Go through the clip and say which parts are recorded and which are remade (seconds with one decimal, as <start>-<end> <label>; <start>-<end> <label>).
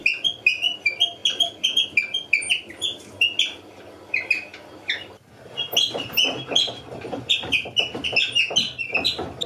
0.0-9.5 recorded